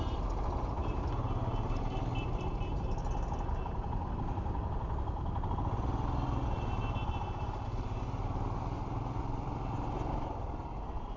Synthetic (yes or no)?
no